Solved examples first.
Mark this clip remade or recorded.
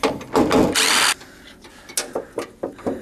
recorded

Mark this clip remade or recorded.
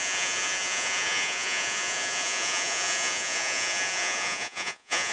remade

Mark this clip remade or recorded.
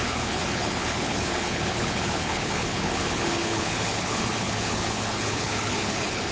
remade